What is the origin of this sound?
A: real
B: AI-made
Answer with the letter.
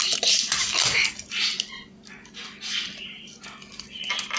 A